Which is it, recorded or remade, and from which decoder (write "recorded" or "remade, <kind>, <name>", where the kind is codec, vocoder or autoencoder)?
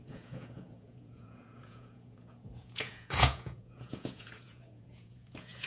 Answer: remade, vocoder, Vocos